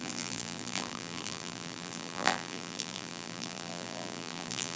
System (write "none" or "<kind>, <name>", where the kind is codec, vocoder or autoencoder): vocoder, BigVGAN v2